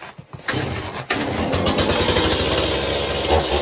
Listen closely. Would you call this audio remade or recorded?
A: recorded